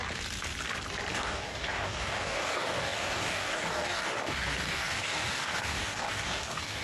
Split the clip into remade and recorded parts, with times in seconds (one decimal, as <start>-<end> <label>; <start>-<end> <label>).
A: 0.0-1.1 recorded; 1.1-6.8 remade